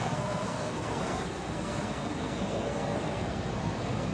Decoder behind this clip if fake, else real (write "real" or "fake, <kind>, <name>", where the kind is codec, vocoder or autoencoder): fake, codec, SNAC